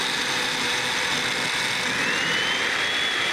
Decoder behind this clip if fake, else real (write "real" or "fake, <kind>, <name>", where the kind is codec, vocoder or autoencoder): real